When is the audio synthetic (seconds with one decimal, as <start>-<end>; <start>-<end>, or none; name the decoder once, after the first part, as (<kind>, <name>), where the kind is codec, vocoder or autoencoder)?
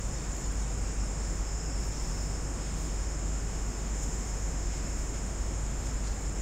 1.1-1.7 (autoencoder, DAC-VAE); 2.1-5.9